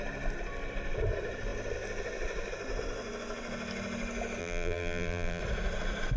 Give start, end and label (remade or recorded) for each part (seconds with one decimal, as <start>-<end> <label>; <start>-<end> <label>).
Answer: 0.0-4.4 recorded; 4.4-5.4 remade; 5.4-6.2 recorded

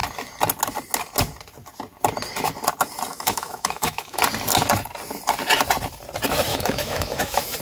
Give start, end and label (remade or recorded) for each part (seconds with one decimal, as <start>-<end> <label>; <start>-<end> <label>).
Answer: 0.0-3.1 recorded; 3.1-4.2 remade; 4.2-6.5 recorded; 6.5-7.6 remade

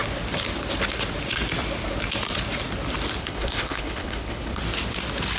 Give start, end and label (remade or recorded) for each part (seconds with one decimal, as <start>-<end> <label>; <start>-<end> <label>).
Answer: 0.0-3.2 recorded; 3.2-4.6 remade; 4.6-5.4 recorded

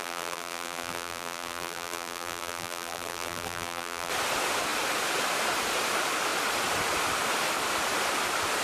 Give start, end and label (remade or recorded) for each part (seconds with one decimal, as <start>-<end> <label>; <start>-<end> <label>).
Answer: 0.0-4.1 remade; 4.1-8.6 recorded